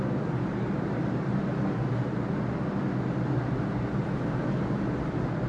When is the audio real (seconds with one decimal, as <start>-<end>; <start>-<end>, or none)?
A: 0.0-5.5